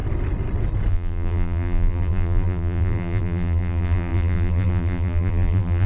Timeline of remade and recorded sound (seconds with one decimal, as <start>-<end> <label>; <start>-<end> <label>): 0.0-0.9 recorded; 0.9-5.9 remade